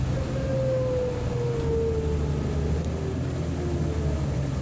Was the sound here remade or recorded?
recorded